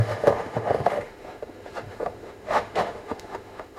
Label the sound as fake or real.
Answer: fake